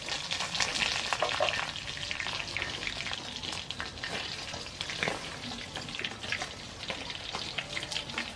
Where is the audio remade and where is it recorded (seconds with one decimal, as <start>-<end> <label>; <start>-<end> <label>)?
0.0-2.5 recorded; 2.5-3.0 remade; 3.0-8.4 recorded